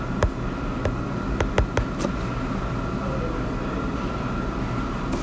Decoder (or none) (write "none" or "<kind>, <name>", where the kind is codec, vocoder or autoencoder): none